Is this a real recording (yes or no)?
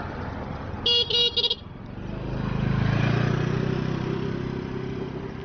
yes